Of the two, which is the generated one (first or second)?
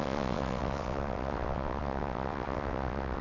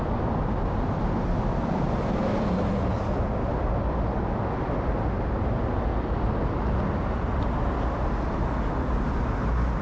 first